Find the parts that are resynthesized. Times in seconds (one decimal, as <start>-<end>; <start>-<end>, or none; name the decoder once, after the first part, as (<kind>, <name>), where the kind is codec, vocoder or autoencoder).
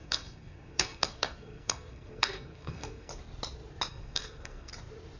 0.0-3.1 (codec, SNAC); 3.9-4.7